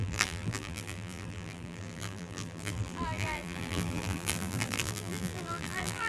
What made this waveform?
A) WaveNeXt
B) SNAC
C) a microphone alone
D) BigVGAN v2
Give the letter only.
D